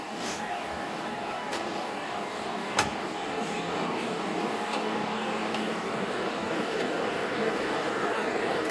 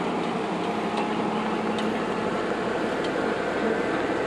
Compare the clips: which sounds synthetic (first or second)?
first